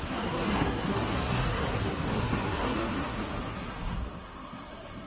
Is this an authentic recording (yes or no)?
no